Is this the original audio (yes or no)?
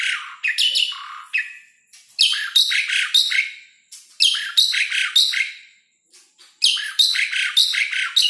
yes